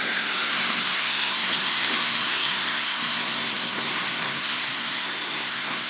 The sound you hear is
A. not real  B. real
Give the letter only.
A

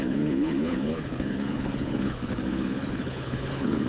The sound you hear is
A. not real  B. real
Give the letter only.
A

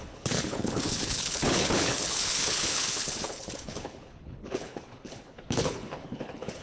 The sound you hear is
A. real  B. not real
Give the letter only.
B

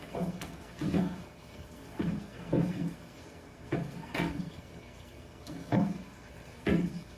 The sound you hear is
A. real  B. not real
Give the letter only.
B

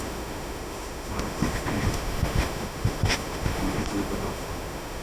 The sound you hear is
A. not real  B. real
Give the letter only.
A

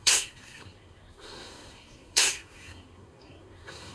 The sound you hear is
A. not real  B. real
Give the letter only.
A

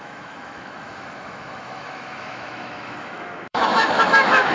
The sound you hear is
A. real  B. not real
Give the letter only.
B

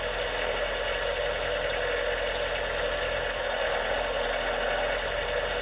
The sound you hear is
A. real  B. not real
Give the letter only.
A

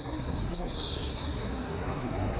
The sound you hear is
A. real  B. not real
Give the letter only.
B